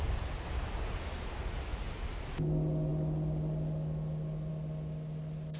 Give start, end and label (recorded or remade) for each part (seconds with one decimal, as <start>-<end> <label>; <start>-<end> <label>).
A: 0.0-5.6 recorded